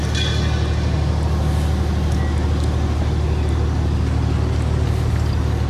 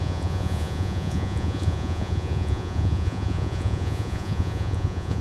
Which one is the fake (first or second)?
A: second